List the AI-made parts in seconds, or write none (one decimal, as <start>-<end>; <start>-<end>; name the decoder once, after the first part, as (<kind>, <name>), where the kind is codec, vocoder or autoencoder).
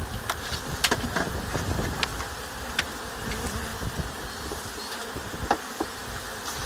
3.7-5.0 (vocoder, BigVGAN v2); 6.0-6.7